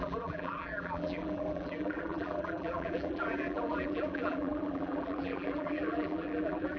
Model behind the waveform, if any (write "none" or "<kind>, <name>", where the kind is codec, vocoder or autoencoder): vocoder, BigVGAN v2